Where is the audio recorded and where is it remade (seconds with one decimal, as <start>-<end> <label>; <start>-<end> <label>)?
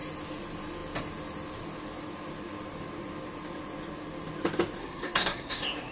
0.0-4.8 recorded; 4.8-5.9 remade